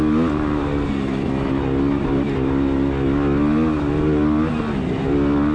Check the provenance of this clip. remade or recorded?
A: recorded